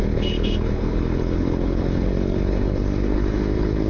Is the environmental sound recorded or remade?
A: remade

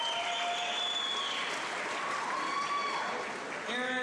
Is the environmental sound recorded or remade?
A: recorded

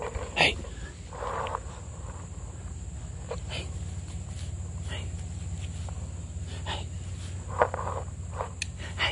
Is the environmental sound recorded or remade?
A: recorded